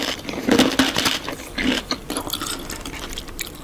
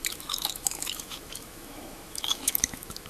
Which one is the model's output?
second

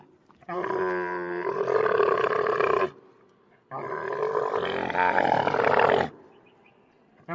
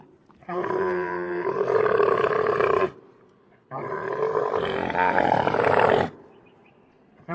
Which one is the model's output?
second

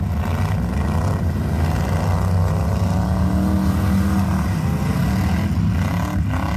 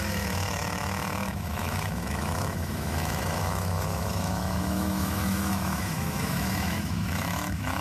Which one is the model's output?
second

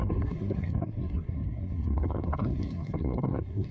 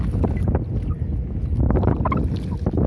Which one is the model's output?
first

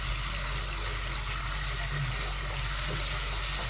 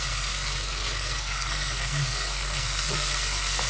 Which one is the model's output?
second